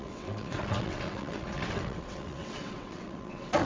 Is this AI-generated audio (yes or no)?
yes